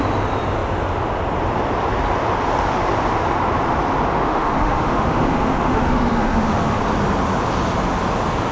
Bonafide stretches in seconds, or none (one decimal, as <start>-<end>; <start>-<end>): 0.0-4.1; 6.8-8.5

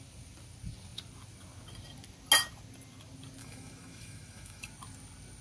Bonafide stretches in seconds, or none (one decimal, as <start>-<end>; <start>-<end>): 0.0-3.4; 4.7-5.4